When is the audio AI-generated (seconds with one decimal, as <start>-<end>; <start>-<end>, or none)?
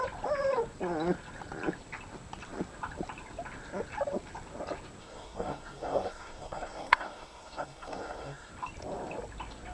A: 5.0-8.5